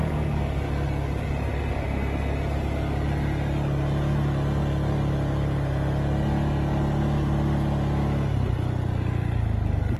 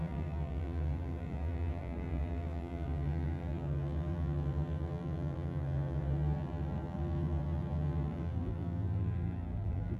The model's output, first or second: second